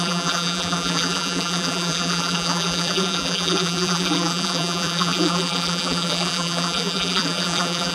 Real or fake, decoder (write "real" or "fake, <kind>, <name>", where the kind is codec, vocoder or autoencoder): fake, vocoder, BigVGAN v2